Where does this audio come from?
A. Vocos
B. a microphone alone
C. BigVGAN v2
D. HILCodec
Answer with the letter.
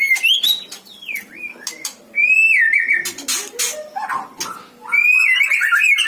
B